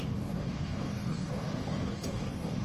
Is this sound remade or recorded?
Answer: remade